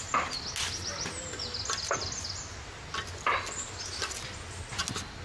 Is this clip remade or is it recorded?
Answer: recorded